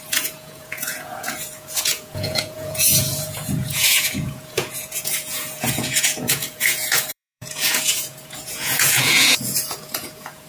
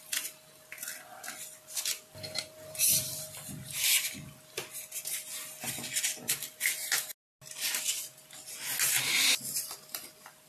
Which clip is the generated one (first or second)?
first